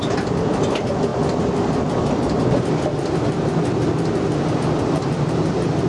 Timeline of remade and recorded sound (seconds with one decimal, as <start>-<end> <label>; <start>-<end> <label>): 0.0-5.9 recorded